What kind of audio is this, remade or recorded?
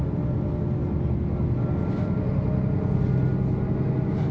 recorded